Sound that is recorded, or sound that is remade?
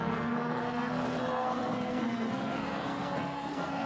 remade